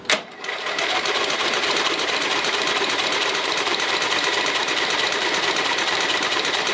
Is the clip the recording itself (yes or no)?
no